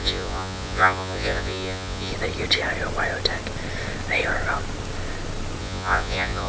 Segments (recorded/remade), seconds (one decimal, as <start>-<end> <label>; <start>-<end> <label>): 0.0-2.1 remade; 2.1-5.6 recorded; 5.6-6.5 remade